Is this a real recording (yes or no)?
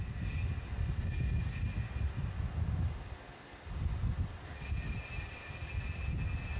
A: yes